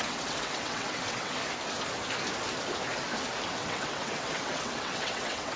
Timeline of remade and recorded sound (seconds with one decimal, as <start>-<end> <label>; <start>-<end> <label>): 0.0-1.4 remade; 1.4-3.5 recorded; 3.5-5.6 remade